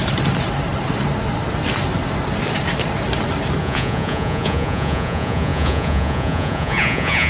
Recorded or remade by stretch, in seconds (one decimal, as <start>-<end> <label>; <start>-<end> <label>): 0.0-3.6 recorded; 3.6-7.3 remade